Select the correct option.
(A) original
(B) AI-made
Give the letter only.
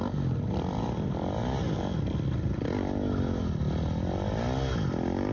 A